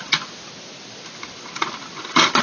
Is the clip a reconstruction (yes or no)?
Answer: no